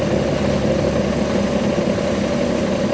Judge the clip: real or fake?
real